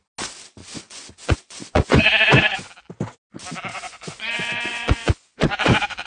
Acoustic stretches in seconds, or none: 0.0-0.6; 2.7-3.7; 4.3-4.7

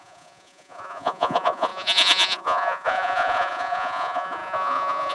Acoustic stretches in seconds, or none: none

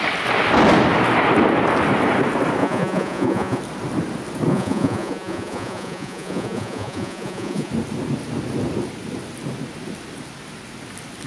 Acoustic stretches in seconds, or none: 0.0-2.6; 3.6-4.5; 7.7-11.3

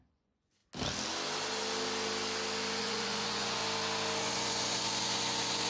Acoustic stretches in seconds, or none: 0.6-2.8; 3.6-4.2

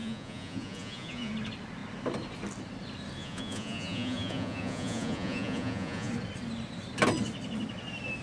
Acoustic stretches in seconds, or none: 1.3-3.2; 6.1-8.2